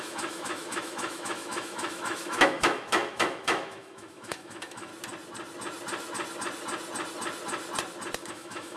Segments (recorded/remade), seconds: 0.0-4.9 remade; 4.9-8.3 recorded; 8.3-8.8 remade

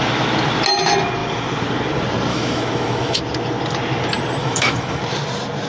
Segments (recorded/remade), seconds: 0.0-2.3 recorded; 2.3-3.2 remade; 3.2-4.4 recorded; 4.4-5.0 remade; 5.0-5.7 recorded

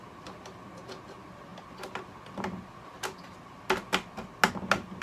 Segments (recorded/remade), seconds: 0.0-5.0 recorded

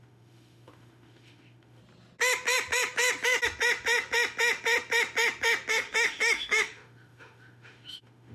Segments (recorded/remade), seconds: 0.0-1.8 remade; 1.8-5.7 recorded; 5.7-8.3 remade

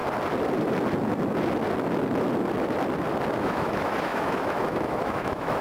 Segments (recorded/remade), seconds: 0.0-3.4 recorded; 3.4-5.6 remade

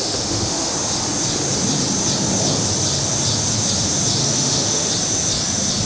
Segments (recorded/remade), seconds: 0.0-0.7 remade; 0.7-4.2 recorded; 4.2-4.9 remade; 4.9-5.9 recorded

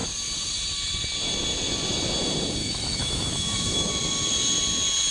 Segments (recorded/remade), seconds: 0.0-2.6 recorded; 2.6-3.9 remade; 3.9-5.1 recorded